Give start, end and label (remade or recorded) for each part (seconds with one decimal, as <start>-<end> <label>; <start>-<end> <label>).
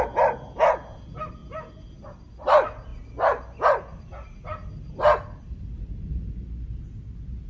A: 0.0-7.5 recorded